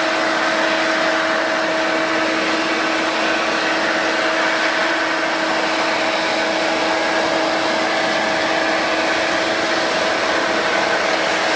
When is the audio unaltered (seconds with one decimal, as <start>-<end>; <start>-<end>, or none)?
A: 0.0-11.6